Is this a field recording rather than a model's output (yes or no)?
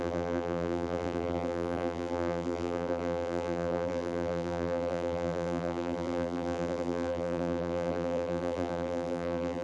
no